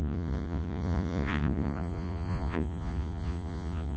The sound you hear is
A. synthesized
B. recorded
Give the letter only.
A